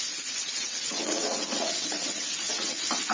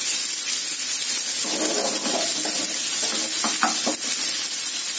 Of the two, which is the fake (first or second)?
first